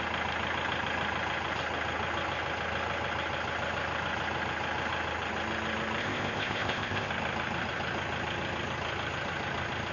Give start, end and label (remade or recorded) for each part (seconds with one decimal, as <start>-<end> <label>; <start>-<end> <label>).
0.0-6.0 recorded; 6.0-7.1 remade; 7.1-9.9 recorded